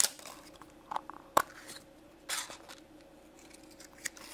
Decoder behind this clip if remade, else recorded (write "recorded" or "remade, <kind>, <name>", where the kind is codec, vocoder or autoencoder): remade, vocoder, BigVGAN v2